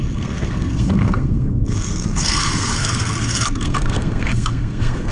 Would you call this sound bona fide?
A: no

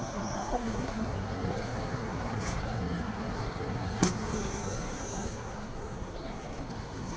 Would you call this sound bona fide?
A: no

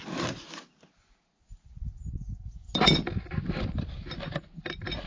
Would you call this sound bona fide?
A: yes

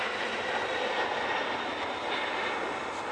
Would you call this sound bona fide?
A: no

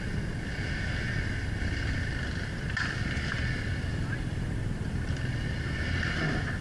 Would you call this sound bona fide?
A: yes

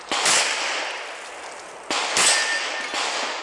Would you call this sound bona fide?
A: yes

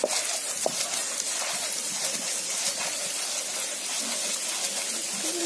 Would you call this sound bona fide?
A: yes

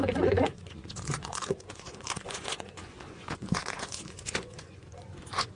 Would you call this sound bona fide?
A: no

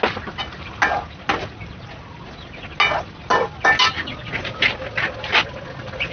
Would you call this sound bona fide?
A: yes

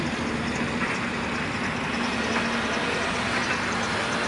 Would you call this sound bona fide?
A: yes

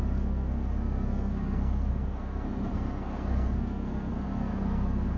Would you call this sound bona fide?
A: no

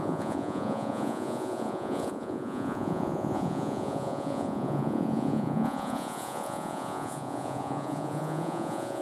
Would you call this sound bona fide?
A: no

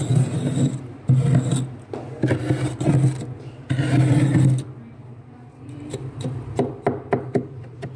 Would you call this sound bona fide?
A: yes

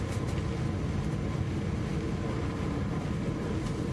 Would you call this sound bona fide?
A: yes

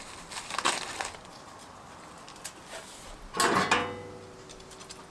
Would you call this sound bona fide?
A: yes